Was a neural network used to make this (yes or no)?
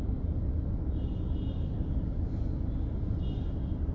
no